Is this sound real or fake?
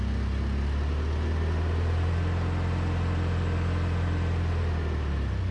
real